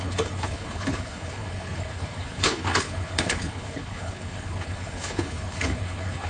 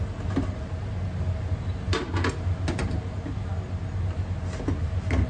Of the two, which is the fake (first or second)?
first